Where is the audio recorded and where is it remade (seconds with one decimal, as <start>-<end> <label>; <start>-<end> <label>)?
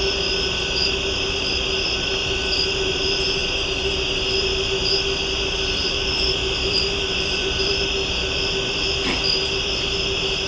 0.0-5.8 recorded; 5.8-7.8 remade; 7.8-10.5 recorded